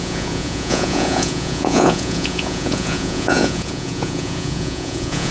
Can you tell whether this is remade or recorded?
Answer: remade